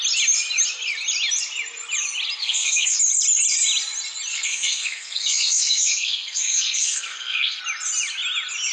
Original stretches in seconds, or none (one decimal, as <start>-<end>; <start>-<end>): 0.0-2.4; 3.0-4.3; 7.6-8.7